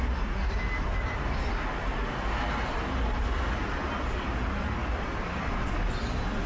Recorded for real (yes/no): yes